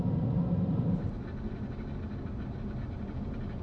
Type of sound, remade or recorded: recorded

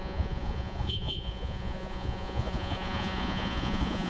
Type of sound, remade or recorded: remade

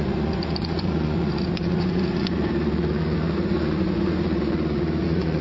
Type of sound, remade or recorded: remade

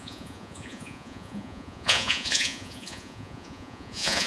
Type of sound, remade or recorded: remade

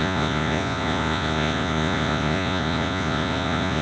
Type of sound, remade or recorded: remade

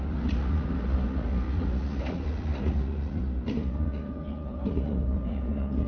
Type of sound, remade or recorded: remade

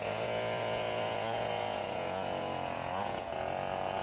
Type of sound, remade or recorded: remade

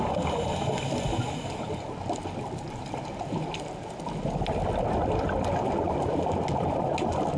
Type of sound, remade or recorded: recorded